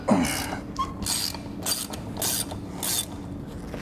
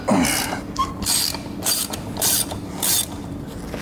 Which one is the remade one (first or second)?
second